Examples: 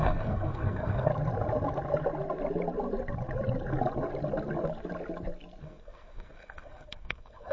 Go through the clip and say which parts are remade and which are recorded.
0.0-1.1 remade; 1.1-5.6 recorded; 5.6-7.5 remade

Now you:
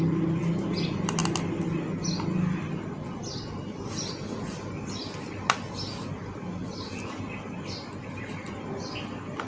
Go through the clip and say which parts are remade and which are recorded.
0.0-9.5 recorded

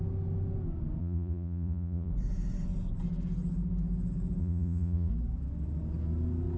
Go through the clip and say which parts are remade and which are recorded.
0.0-1.0 recorded; 1.0-2.1 remade; 2.1-4.4 recorded; 4.4-5.1 remade; 5.1-6.6 recorded

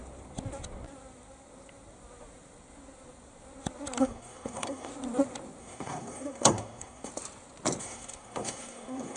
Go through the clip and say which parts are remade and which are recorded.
0.0-4.0 recorded; 4.0-4.9 remade; 4.9-5.6 recorded; 5.6-7.1 remade; 7.1-7.8 recorded; 7.8-9.2 remade

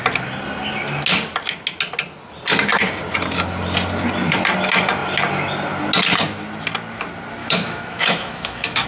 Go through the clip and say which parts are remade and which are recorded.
0.0-7.4 recorded; 7.4-8.9 remade